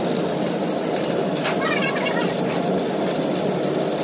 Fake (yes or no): no